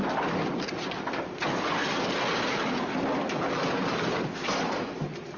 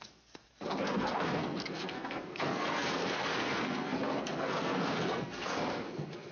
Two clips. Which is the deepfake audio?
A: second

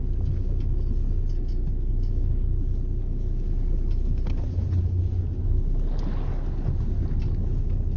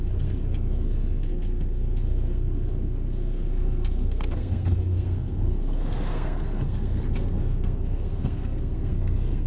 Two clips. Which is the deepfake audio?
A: second